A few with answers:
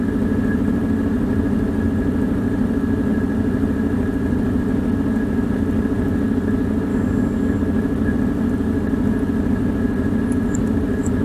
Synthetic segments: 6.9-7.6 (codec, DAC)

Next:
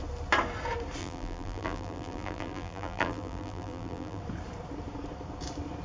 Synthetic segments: 1.0-4.2 (vocoder, BigVGAN v2)

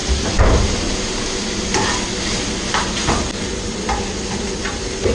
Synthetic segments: 0.0-0.6 (vocoder, BigVGAN v2)

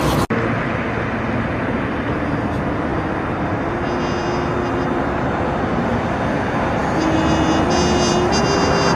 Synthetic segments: none

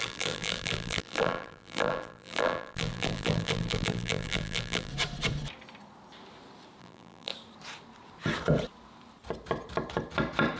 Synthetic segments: 0.0-4.9 (vocoder, BigVGAN v2); 6.8-7.3